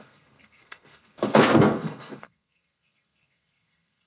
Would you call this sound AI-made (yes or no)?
yes